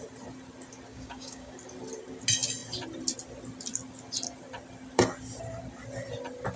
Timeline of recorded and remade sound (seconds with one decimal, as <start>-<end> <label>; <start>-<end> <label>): 0.0-0.9 recorded; 0.9-1.5 remade; 1.5-6.6 recorded